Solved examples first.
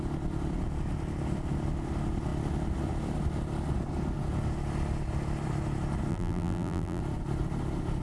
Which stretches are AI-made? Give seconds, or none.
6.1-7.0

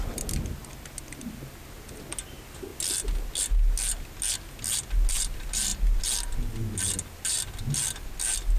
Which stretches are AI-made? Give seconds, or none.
none